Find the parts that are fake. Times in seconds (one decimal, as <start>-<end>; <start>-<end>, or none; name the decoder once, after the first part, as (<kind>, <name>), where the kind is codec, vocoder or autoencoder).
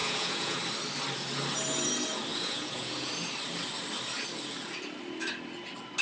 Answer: 0.0-0.6 (vocoder, Vocos); 2.3-3.1